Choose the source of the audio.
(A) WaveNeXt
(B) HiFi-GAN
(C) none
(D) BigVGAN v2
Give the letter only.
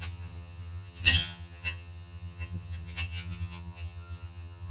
B